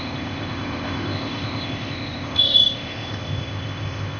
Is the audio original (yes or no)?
no